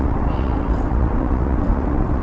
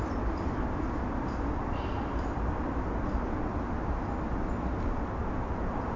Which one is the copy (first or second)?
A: first